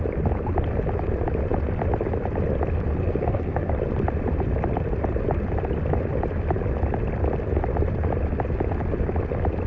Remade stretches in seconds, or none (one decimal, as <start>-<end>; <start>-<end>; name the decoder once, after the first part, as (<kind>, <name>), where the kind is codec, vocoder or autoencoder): 3.0-3.7 (codec, SNAC)